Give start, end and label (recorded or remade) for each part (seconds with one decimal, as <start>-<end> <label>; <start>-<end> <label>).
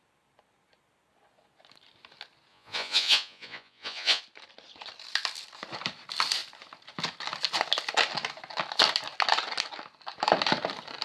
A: 0.0-2.5 recorded; 2.5-4.2 remade; 4.2-11.0 recorded